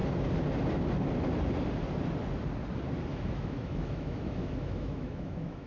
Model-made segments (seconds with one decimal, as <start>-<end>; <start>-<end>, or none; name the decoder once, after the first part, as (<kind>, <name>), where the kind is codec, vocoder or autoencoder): 3.1-5.7 (autoencoder, DAC-VAE)